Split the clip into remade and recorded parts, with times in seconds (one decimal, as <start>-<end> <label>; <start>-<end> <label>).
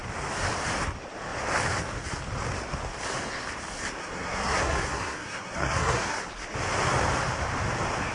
0.0-4.0 recorded; 4.0-6.2 remade; 6.2-8.1 recorded